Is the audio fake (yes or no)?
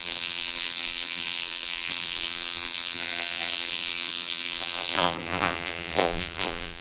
yes